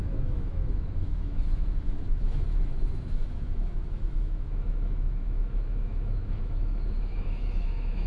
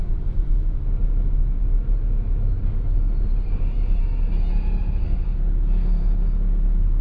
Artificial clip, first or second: first